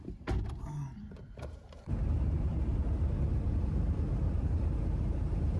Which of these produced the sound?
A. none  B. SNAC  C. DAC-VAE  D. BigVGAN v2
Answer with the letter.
D